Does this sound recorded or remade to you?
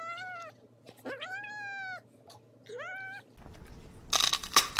recorded